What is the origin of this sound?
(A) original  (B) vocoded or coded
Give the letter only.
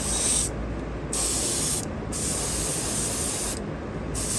A